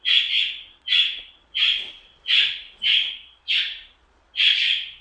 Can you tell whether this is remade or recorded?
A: remade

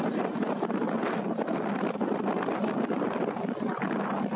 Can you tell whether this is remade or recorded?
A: recorded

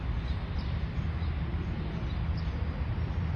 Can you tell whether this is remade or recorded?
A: remade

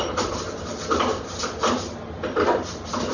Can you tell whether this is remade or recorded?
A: recorded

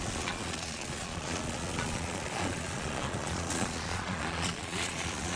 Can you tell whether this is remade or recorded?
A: remade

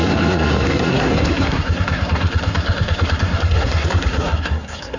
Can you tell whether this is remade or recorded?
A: remade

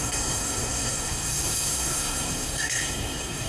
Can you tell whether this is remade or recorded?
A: remade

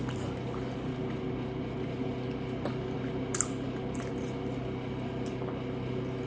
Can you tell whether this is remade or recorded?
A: recorded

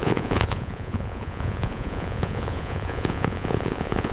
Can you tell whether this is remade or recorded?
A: remade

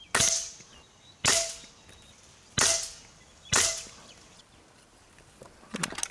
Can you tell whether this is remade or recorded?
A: recorded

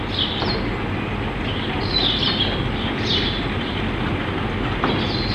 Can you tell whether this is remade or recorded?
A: recorded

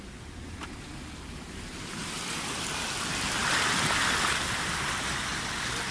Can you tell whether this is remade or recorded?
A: recorded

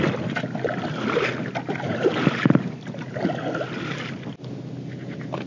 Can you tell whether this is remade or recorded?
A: recorded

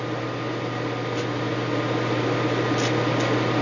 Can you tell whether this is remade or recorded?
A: recorded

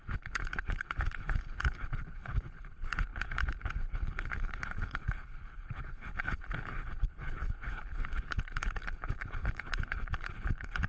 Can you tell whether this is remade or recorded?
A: remade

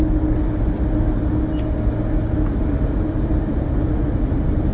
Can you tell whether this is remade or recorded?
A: recorded